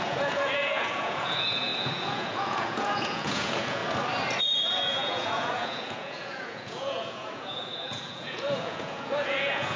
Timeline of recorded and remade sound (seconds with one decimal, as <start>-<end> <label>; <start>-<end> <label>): 0.0-3.8 remade; 3.8-4.4 recorded; 4.4-9.8 remade